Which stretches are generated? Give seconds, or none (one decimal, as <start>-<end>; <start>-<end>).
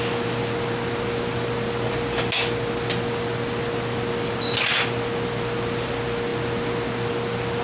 none